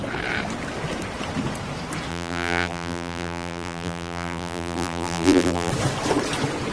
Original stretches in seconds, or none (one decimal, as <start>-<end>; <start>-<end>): 0.0-2.1; 5.7-6.7